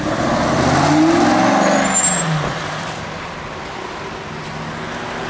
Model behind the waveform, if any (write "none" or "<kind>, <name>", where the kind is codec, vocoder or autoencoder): none